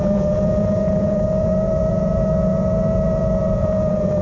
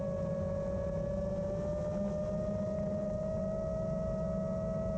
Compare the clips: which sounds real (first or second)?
second